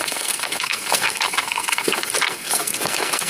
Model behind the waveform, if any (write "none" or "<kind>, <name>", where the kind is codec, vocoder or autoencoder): codec, SNAC